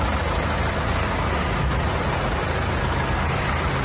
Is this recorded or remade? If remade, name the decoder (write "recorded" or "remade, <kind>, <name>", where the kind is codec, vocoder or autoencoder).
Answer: recorded